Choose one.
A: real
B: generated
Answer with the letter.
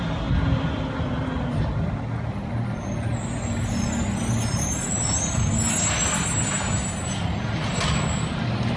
A